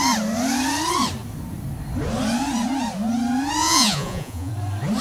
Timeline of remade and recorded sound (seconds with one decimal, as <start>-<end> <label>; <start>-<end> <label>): 0.0-3.6 recorded; 3.6-4.5 remade; 4.5-5.0 recorded